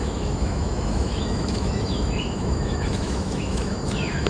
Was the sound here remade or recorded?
remade